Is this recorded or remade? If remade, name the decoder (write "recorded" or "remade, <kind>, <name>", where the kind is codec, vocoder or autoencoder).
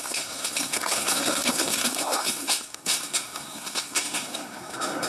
remade, codec, SNAC